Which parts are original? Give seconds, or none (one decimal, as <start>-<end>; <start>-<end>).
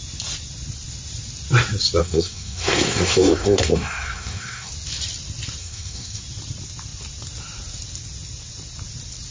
0.0-2.0; 4.7-5.6; 6.2-9.3